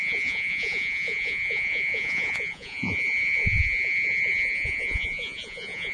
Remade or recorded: remade